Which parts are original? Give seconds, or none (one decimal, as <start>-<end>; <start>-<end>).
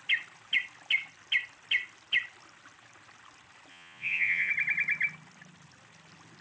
0.0-3.7; 4.5-6.4